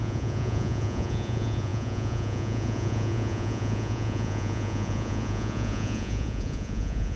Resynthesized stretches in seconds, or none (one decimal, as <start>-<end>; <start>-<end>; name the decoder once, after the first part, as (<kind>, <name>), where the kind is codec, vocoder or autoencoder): 0.0-7.2 (vocoder, Vocos)